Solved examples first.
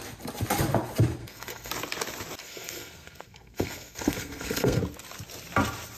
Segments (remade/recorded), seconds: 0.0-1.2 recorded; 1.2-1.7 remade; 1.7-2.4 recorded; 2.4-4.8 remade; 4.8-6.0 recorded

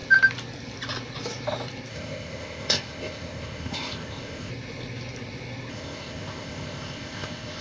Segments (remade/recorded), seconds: 0.0-1.9 recorded; 1.9-4.5 remade; 4.5-5.7 recorded; 5.7-7.6 remade

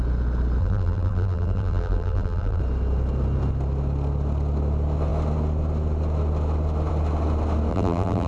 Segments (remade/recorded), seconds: 0.0-0.6 recorded; 0.6-2.6 remade; 2.6-7.7 recorded; 7.7-8.3 remade